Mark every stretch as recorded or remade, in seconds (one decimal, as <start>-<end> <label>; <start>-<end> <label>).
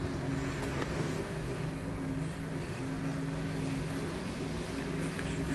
0.0-0.6 recorded; 0.6-1.5 remade; 1.5-5.5 recorded